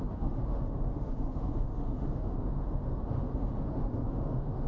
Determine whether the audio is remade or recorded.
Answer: remade